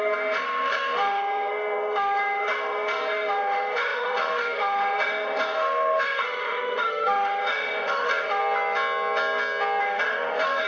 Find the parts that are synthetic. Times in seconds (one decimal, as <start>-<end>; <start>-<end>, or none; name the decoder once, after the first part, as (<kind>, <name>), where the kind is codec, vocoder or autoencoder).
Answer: 0.0-8.4 (autoencoder, DAC-VAE); 9.8-10.7